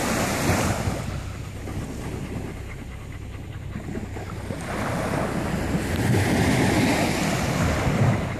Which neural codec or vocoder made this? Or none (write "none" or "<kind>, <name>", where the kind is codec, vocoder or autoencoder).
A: none